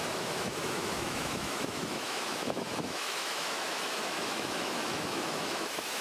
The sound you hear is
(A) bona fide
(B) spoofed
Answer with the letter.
B